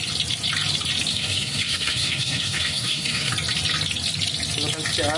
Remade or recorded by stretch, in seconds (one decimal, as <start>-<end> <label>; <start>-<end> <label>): 0.0-1.1 recorded; 1.1-3.3 remade; 3.3-5.2 recorded